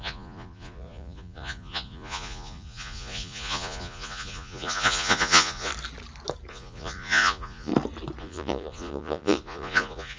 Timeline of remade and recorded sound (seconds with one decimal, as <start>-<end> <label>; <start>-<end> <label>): 0.0-5.7 remade; 5.7-6.5 recorded; 6.5-7.7 remade; 7.7-8.2 recorded; 8.2-10.2 remade